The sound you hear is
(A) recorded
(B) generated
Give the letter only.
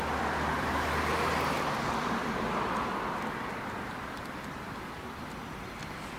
A